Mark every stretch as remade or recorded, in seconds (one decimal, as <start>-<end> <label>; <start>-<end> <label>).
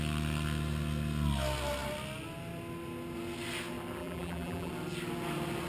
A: 0.0-4.0 recorded; 4.0-4.7 remade; 4.7-5.7 recorded